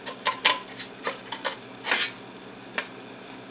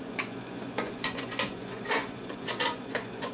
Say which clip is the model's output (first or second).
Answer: second